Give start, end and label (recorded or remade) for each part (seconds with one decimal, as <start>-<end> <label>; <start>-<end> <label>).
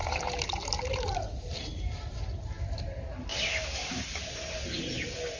0.0-2.2 remade; 2.2-3.3 recorded; 3.3-4.2 remade; 4.2-5.4 recorded